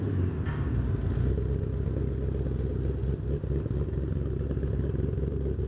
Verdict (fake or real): real